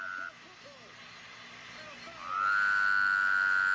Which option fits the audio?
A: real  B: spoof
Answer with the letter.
A